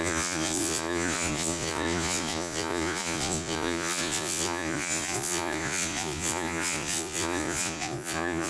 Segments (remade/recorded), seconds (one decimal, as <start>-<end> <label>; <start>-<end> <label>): 0.0-8.5 remade